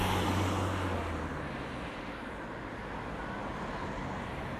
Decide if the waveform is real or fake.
real